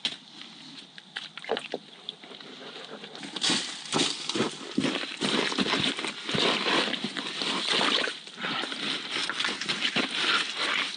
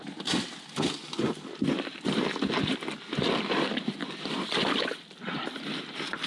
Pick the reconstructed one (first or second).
first